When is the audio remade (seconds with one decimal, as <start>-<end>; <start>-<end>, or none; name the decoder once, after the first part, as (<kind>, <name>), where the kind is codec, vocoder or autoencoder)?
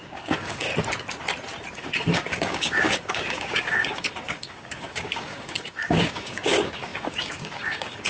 0.0-0.7 (codec, DAC); 1.7-8.1